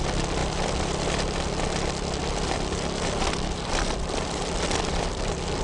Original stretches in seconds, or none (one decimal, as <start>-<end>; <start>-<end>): 0.0-0.4; 1.2-2.2